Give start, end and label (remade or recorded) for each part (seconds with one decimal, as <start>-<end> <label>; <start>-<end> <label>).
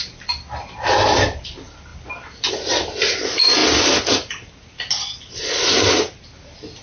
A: 0.0-3.6 remade; 3.6-6.2 recorded; 6.2-6.8 remade